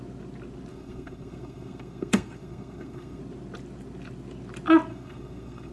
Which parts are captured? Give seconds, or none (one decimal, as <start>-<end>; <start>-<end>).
0.0-0.7; 3.2-4.9